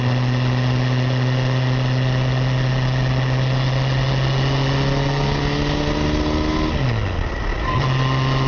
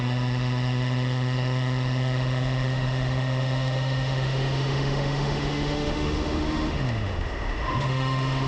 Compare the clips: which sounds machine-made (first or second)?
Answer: second